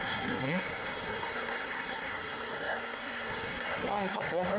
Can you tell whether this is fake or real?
fake